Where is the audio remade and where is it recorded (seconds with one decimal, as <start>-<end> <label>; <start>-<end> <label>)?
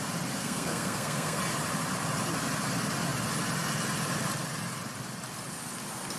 0.0-0.4 recorded; 0.4-1.4 remade; 1.4-6.2 recorded